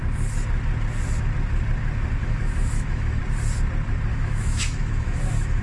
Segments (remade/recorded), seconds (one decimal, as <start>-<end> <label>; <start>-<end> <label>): 0.0-2.2 recorded; 2.2-3.2 remade; 3.2-4.1 recorded; 4.1-5.6 remade